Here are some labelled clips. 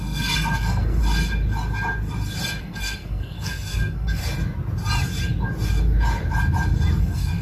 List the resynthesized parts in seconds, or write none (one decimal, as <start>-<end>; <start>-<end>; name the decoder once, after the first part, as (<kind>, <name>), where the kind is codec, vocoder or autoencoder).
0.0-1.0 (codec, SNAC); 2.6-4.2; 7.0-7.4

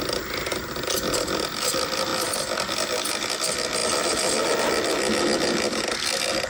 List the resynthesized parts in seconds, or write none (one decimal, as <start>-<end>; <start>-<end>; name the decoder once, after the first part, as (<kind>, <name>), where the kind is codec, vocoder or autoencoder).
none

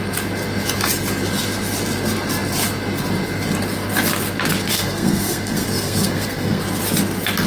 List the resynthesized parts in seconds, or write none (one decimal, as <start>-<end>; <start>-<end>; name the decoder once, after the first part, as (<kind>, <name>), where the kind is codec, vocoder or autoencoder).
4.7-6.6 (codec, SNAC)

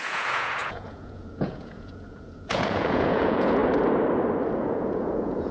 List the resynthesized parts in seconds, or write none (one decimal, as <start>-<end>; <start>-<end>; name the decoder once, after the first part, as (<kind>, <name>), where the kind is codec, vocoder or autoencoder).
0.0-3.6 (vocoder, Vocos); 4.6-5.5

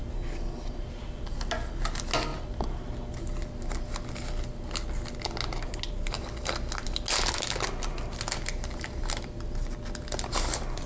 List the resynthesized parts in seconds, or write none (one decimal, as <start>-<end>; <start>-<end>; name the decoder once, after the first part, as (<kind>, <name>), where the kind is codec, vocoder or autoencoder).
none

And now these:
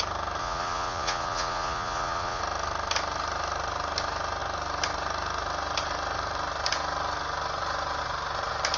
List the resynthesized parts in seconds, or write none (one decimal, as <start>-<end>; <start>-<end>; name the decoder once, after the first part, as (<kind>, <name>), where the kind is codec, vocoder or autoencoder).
0.4-2.4 (vocoder, Vocos)